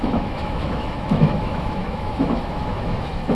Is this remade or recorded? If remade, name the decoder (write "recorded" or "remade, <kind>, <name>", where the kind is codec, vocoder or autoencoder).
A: remade, autoencoder, DAC-VAE